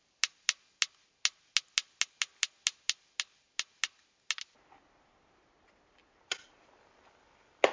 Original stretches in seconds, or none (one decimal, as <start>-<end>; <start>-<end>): 0.0-7.7